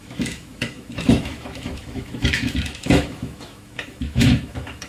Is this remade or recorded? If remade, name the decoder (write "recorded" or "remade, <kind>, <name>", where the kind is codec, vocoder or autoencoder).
remade, autoencoder, DAC-VAE